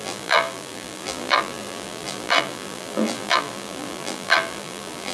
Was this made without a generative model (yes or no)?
no